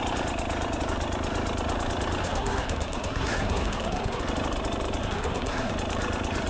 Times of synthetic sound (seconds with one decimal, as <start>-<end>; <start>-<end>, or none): 2.2-4.2; 5.0-5.7

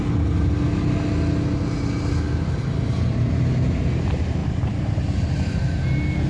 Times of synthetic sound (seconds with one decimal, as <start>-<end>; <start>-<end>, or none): 4.4-5.0

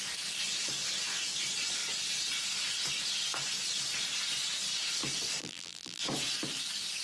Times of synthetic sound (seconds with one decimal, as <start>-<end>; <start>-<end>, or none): 5.4-6.0

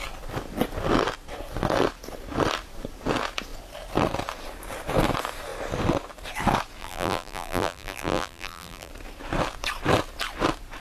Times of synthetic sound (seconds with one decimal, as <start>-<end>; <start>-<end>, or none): 6.8-8.9